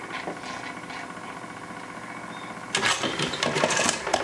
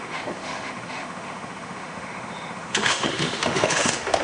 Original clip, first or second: first